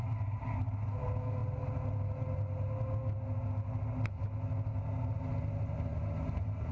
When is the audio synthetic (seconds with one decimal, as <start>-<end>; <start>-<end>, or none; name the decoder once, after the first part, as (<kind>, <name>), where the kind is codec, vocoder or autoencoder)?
none